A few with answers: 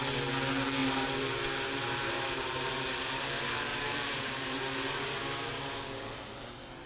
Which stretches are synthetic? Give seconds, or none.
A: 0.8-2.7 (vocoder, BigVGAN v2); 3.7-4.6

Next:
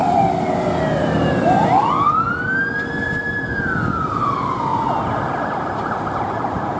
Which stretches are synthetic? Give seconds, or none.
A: none

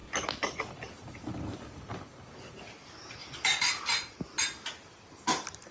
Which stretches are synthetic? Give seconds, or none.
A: 0.0-1.3 (vocoder, BigVGAN v2); 3.2-3.7